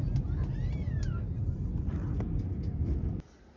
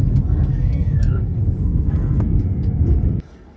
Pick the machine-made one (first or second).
second